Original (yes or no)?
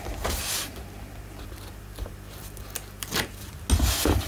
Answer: yes